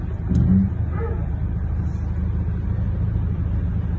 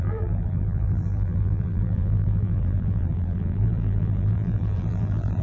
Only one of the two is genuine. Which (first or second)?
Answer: first